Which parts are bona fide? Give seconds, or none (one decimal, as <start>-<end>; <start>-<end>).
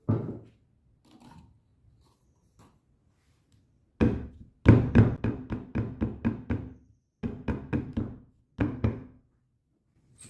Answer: 0.0-8.6; 9.2-10.3